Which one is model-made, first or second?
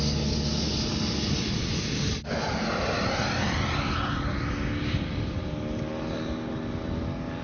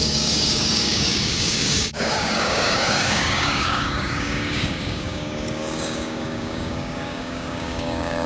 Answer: second